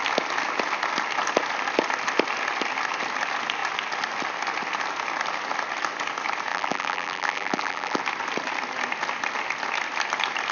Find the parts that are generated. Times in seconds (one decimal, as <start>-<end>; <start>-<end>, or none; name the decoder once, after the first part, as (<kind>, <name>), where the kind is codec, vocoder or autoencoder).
6.5-8.0 (vocoder, BigVGAN v2)